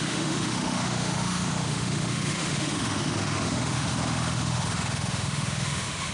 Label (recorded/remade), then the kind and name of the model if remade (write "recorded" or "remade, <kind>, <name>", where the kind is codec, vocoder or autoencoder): remade, autoencoder, DAC-VAE